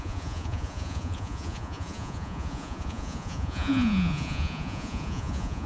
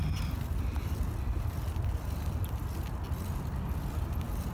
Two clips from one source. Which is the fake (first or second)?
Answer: first